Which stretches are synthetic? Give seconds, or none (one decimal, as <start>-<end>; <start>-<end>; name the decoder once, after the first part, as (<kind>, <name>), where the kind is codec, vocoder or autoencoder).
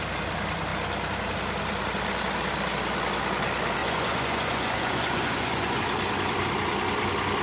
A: 3.8-5.8 (vocoder, Vocos)